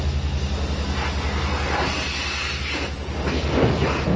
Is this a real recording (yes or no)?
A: yes